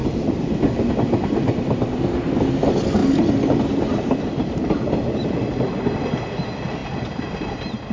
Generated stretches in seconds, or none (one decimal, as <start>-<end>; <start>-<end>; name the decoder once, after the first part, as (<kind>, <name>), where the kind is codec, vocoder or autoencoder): none